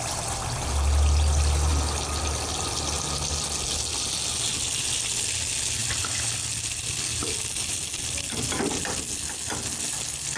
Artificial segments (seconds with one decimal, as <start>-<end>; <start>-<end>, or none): 5.8-6.3; 7.2-8.8